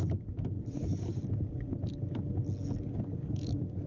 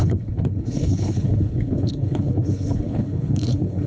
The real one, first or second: first